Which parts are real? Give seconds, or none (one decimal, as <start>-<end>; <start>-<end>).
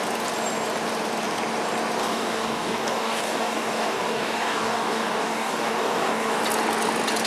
0.0-2.0; 6.4-7.3